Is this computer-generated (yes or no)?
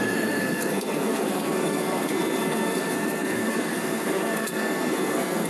yes